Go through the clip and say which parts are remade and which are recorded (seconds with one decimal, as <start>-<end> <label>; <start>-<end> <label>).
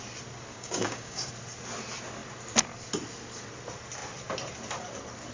0.0-0.5 recorded; 0.5-1.3 remade; 1.3-5.3 recorded